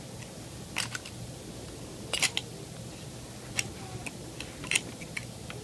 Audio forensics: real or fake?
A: real